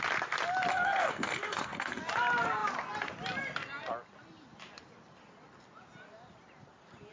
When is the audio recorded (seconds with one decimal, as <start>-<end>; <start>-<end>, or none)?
0.0-0.7; 2.0-7.1